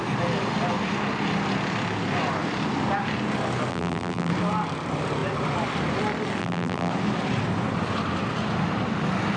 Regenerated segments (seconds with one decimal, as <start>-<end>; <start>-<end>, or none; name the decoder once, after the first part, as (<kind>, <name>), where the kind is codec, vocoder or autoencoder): 3.7-4.3 (vocoder, BigVGAN v2); 6.4-6.9